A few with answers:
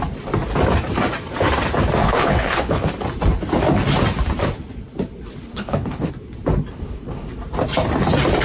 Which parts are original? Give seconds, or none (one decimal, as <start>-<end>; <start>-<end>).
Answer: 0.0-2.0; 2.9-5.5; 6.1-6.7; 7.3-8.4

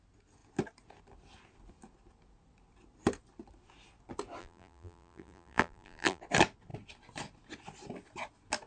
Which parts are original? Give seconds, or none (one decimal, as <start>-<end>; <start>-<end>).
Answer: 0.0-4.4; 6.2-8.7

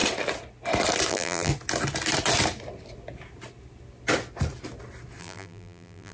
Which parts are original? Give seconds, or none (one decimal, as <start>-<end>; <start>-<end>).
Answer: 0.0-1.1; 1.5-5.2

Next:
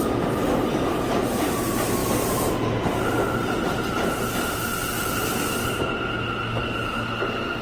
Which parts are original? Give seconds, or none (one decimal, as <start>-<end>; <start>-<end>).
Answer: 0.0-7.6

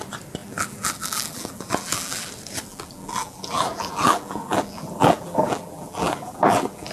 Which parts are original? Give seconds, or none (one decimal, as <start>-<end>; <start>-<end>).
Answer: 0.0-0.4; 2.3-2.7